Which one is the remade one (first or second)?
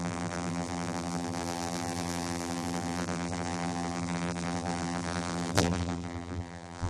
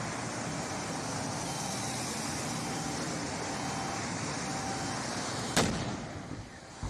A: first